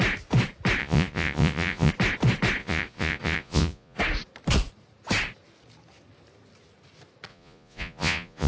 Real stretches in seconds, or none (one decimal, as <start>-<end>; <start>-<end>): 0.0-0.8; 1.9-2.6; 4.0-7.3